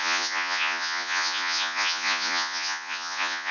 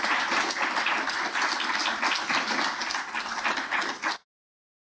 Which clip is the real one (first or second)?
second